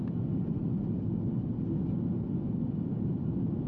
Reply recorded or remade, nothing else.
recorded